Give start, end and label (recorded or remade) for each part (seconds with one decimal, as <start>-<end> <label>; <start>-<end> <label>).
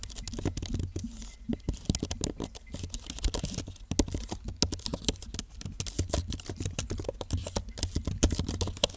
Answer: 0.0-9.0 recorded